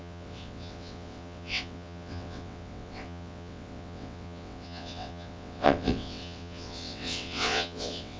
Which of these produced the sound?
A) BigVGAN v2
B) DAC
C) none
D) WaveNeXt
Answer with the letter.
D